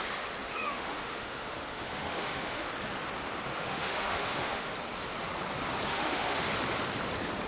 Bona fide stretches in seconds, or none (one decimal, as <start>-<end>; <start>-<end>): 0.0-0.4; 2.7-3.5; 4.7-5.9; 6.5-7.5